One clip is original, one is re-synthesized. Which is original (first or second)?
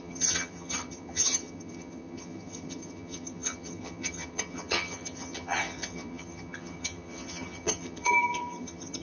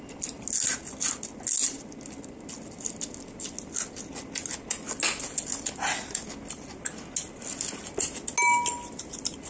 second